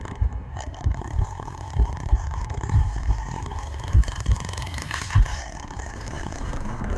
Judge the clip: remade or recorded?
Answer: remade